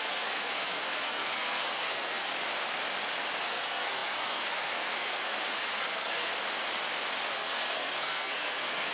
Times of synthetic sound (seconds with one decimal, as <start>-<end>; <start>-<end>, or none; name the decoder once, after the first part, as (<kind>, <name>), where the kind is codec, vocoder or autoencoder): 0.0-2.3 (codec, SNAC); 3.4-6.3; 7.3-8.9